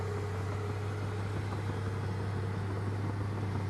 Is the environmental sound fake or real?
real